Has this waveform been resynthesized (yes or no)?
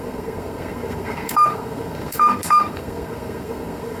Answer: yes